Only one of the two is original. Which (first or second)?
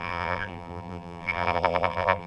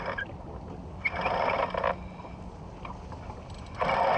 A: second